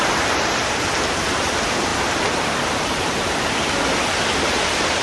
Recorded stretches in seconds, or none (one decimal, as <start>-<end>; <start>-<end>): 0.0-5.0